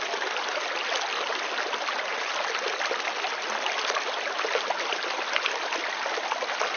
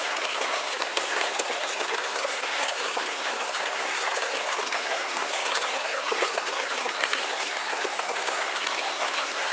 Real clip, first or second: first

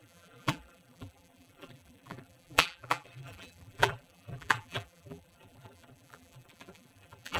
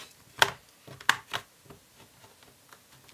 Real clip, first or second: second